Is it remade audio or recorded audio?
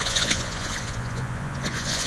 remade